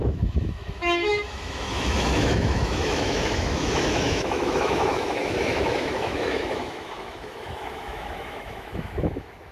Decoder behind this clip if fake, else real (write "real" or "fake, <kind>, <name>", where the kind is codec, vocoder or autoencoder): fake, autoencoder, DAC-VAE